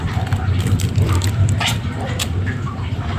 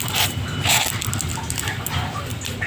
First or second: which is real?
second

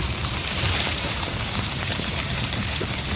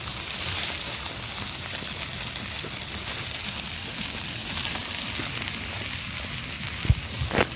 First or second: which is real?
second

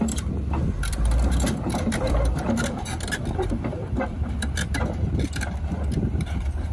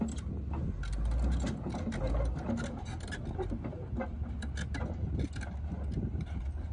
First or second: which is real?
second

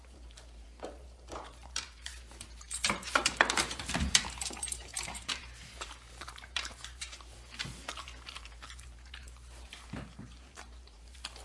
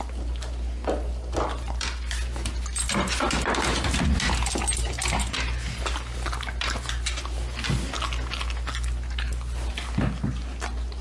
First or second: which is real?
second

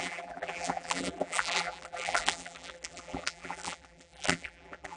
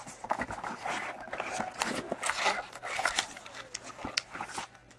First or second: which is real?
second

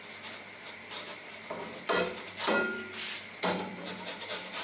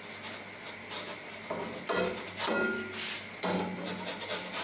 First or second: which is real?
second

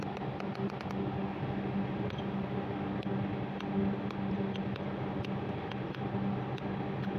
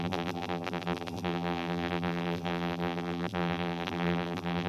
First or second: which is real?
first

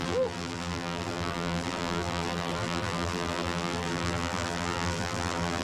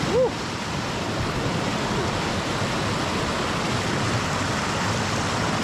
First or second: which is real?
second